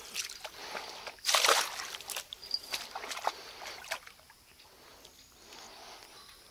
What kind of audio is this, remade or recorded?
recorded